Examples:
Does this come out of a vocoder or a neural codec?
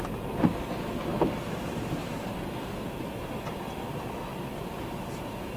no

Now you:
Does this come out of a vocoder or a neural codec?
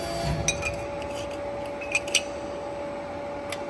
no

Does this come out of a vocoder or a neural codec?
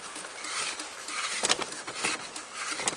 no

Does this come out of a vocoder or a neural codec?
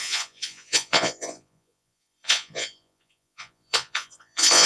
yes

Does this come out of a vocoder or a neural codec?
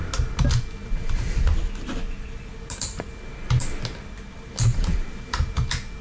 no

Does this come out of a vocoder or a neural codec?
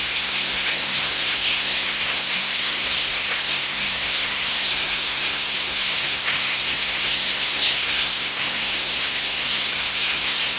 yes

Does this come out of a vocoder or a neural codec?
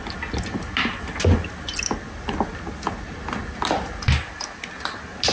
no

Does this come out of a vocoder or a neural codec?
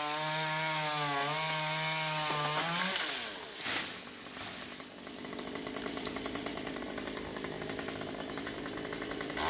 no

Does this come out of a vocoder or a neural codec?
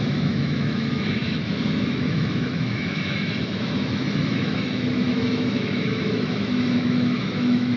yes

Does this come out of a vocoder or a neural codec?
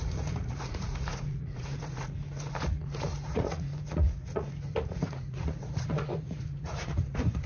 yes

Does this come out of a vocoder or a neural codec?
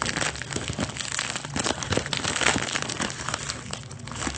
no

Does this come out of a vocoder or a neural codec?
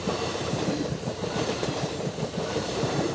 yes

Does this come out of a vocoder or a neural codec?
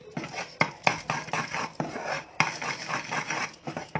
no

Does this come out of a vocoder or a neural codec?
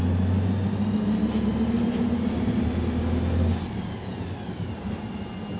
no